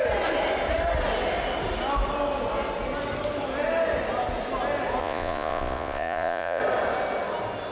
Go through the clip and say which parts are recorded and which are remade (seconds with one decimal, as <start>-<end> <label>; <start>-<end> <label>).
0.0-5.0 recorded; 5.0-6.6 remade; 6.6-7.7 recorded